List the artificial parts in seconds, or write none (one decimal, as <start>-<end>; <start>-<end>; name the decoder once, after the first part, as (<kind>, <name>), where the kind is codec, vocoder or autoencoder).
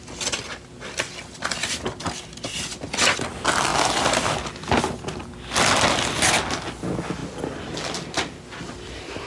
none